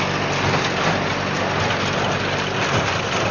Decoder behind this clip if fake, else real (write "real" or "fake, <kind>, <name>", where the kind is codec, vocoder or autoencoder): real